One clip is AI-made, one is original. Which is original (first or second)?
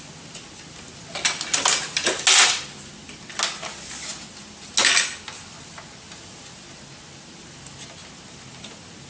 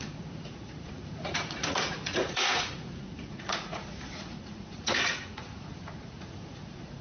first